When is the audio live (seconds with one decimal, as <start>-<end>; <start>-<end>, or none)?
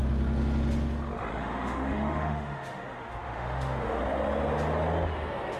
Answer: 0.0-1.4; 4.0-5.6